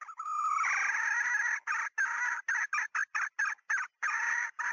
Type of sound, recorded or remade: recorded